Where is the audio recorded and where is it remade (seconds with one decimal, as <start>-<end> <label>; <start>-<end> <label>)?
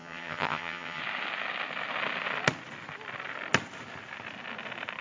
0.0-1.0 remade; 1.0-5.0 recorded